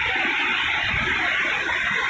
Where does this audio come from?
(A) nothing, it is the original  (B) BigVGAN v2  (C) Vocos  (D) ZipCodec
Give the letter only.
A